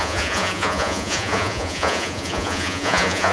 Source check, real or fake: fake